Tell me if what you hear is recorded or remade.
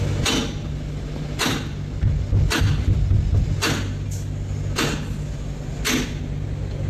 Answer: recorded